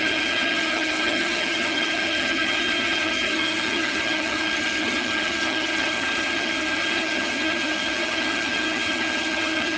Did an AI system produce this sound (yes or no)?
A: yes